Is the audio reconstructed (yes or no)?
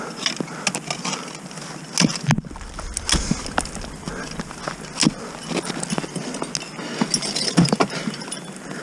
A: no